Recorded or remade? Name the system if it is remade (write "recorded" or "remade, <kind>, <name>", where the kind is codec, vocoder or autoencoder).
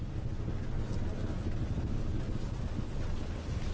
recorded